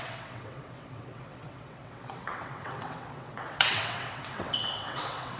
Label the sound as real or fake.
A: fake